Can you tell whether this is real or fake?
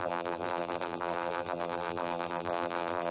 fake